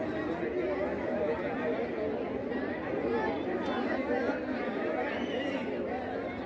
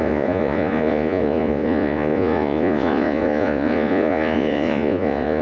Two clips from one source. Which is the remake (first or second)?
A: second